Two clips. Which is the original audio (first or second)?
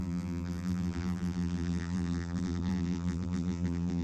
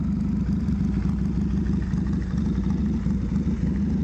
second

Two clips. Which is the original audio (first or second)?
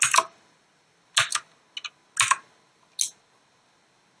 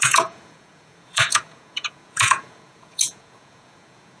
first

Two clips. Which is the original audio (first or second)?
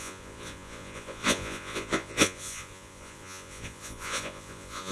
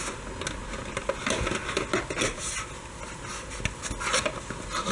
second